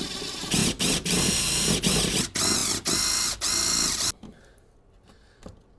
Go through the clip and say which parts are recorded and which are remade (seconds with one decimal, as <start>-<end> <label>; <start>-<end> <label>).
0.0-0.6 recorded; 0.6-1.7 remade; 1.7-5.8 recorded